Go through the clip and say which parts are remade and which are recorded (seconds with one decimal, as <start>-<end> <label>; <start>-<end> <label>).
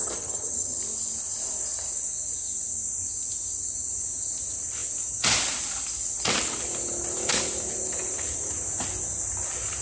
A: 0.0-0.8 remade; 0.8-9.8 recorded